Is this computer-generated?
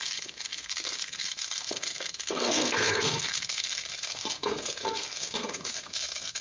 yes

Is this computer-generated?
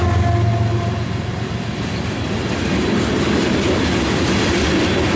no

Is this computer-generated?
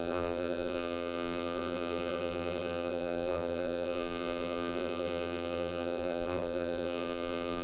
yes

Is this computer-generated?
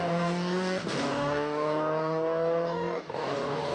yes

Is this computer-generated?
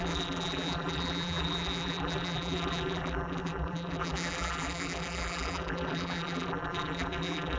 yes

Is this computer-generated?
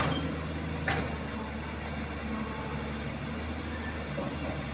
no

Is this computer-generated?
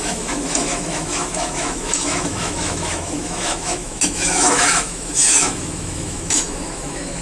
yes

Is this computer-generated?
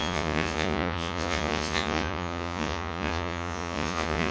yes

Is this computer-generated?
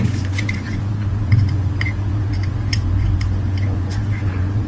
yes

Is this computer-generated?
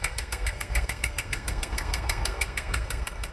yes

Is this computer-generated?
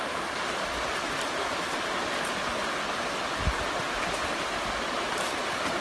no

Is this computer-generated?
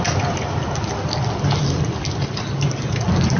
no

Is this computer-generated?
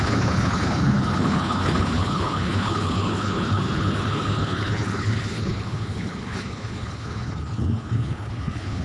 yes